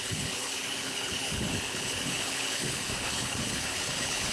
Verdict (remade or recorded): remade